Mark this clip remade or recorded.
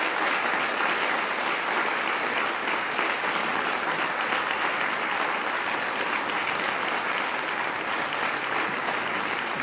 recorded